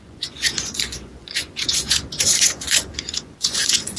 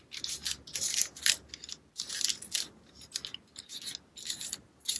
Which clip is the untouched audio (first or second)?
second